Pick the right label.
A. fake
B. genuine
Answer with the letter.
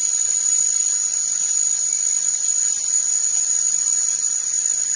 B